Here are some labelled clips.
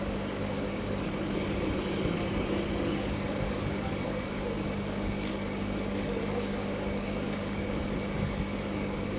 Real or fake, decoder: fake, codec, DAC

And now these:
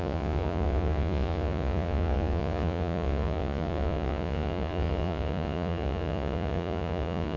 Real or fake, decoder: fake, vocoder, Vocos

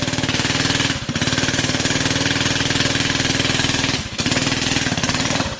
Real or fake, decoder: real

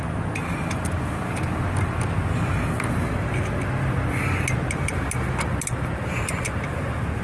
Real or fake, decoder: real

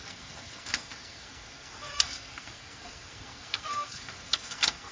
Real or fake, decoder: fake, codec, SNAC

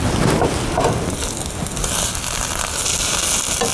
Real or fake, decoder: real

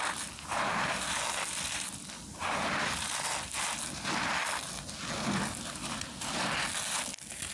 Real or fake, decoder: real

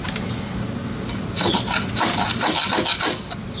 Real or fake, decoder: real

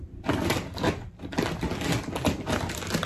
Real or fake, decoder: real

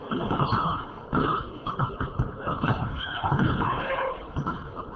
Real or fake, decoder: fake, codec, HILCodec